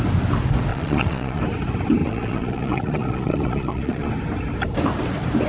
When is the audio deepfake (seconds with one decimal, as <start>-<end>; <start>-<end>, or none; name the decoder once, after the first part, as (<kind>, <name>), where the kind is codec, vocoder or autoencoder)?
0.7-1.4 (vocoder, Vocos); 2.0-4.1